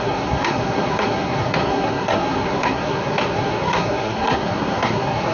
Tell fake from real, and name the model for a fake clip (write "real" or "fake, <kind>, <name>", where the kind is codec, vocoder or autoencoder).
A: fake, codec, SNAC